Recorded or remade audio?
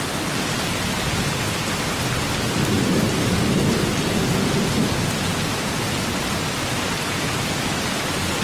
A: recorded